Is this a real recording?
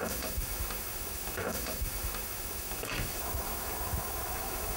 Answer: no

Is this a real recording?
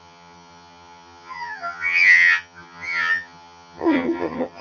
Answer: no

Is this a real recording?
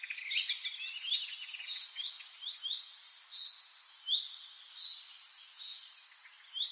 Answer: yes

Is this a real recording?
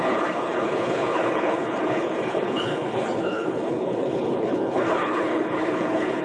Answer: no